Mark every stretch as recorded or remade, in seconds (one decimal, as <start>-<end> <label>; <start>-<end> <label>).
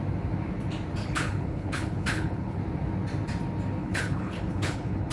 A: 0.0-1.0 recorded; 1.0-2.6 remade; 2.6-3.8 recorded; 3.8-5.1 remade